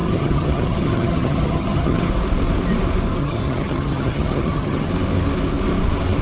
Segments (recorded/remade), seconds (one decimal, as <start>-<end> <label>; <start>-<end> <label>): 0.0-2.1 remade; 2.1-3.2 recorded; 3.2-4.9 remade; 4.9-6.2 recorded